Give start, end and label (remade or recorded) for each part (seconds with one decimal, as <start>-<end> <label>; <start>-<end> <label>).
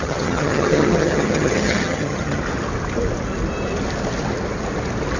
0.0-2.4 remade; 2.4-5.2 recorded